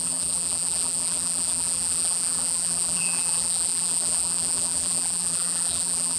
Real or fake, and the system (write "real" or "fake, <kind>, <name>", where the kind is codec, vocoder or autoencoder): fake, vocoder, BigVGAN v2